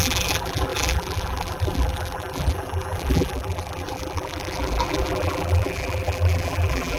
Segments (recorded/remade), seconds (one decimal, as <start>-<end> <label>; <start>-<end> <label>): 0.0-7.0 remade